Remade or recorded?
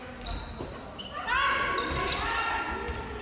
recorded